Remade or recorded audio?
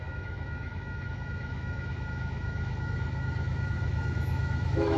remade